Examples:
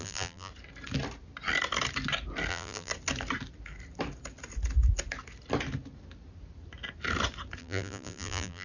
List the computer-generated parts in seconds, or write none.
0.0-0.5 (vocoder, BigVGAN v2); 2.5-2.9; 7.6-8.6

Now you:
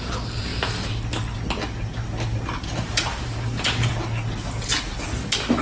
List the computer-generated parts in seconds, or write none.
0.0-0.5 (vocoder, BigVGAN v2); 2.6-3.9

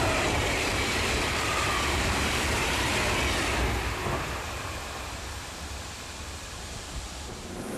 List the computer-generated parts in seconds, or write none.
0.0-2.9 (vocoder, BigVGAN v2); 6.5-7.8

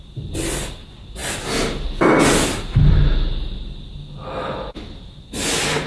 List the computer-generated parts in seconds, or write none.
none

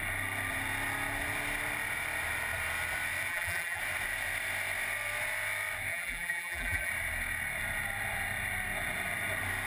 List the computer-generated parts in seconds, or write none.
3.3-3.8 (vocoder, BigVGAN v2); 5.9-6.9